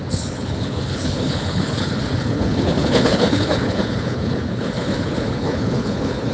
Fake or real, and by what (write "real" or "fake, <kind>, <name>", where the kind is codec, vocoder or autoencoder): fake, codec, HILCodec